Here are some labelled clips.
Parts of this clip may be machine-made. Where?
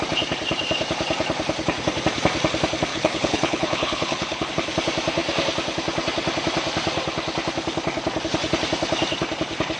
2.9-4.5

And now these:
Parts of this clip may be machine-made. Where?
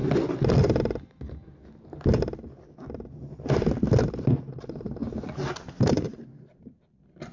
4.4-5.0; 5.9-7.3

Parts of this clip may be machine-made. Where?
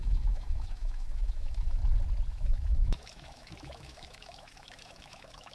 0.0-1.8; 2.3-5.5